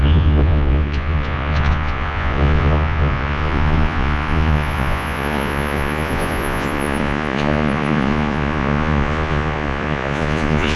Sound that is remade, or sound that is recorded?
remade